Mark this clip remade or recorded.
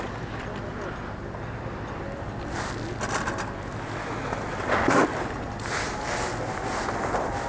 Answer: recorded